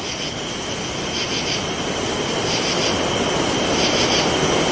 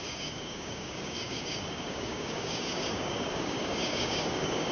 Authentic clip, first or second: first